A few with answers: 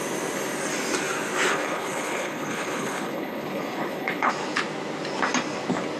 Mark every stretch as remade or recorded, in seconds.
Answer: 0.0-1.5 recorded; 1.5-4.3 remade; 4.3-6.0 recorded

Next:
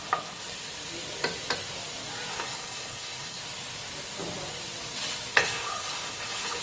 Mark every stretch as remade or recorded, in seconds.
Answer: 0.0-2.3 recorded; 2.3-3.4 remade; 3.4-5.3 recorded; 5.3-6.6 remade

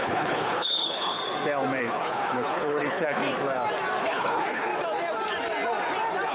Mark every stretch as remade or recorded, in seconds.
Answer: 0.0-1.2 remade; 1.2-1.8 recorded; 1.8-3.2 remade; 3.2-4.0 recorded; 4.0-4.7 remade; 4.7-6.3 recorded

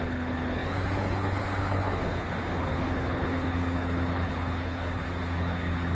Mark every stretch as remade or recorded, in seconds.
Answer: 0.0-5.9 remade

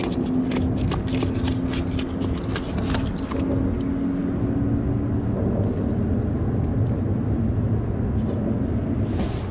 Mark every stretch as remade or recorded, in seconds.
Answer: 0.0-9.5 recorded